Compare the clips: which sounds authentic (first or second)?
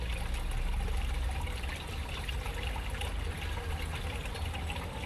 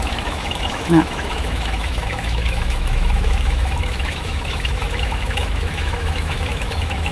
first